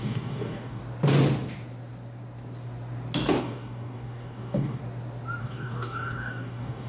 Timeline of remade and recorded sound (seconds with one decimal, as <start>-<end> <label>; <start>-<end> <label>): 0.0-0.8 remade; 0.8-3.4 recorded; 3.4-4.8 remade; 4.8-5.4 recorded; 5.4-6.9 remade